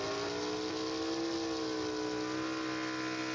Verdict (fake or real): real